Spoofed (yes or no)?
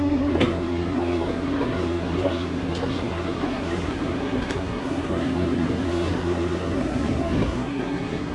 yes